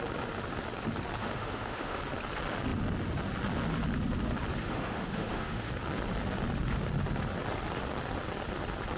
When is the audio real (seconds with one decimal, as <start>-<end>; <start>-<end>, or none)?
0.0-1.2; 2.0-4.6; 5.7-9.0